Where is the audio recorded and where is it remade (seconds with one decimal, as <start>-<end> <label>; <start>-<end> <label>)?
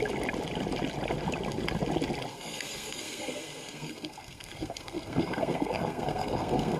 0.0-2.3 recorded; 2.3-6.8 remade